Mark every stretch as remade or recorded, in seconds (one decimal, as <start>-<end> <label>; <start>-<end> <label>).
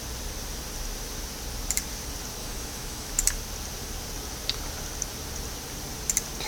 0.0-2.4 recorded; 2.4-3.1 remade; 3.1-6.5 recorded